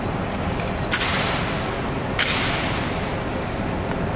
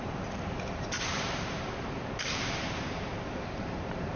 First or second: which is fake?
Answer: second